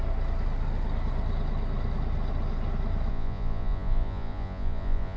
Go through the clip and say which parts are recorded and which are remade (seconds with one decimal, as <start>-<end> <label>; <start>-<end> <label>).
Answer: 0.0-3.1 recorded; 3.1-5.2 remade